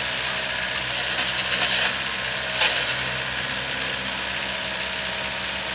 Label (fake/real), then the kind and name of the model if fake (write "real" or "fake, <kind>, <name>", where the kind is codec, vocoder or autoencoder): real